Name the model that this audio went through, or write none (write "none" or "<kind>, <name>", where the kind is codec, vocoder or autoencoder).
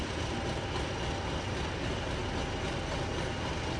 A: none